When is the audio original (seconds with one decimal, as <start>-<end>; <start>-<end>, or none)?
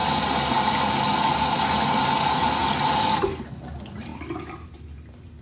0.0-5.4